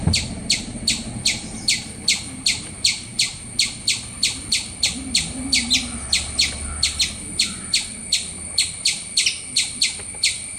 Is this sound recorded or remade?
recorded